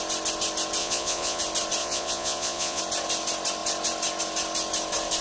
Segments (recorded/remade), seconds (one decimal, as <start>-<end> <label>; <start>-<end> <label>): 0.0-0.8 recorded; 0.8-1.4 remade; 1.4-1.8 recorded; 1.8-2.8 remade; 2.8-5.2 recorded